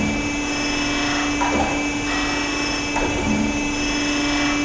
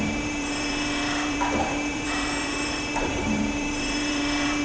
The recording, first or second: first